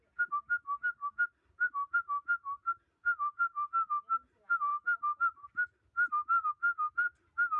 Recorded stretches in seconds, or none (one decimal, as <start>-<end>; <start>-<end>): 0.0-7.6